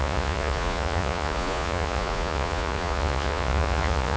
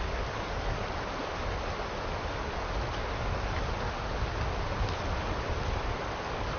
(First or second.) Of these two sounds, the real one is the second